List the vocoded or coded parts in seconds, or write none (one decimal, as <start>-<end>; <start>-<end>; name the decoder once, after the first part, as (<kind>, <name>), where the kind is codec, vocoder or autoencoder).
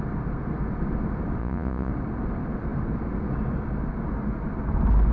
1.4-1.9 (vocoder, Vocos)